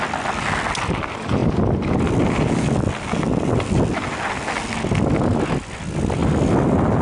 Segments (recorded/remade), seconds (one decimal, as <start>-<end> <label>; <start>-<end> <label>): 0.0-7.0 recorded